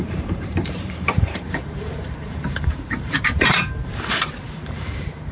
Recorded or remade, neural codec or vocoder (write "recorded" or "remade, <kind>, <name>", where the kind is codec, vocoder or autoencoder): remade, vocoder, BigVGAN v2